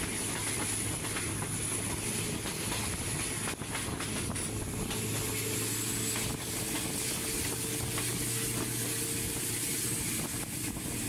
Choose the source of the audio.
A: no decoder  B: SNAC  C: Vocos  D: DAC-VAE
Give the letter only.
A